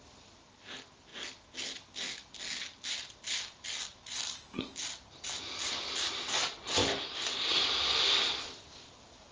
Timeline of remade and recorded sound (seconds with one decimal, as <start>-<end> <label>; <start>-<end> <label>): 0.0-9.3 recorded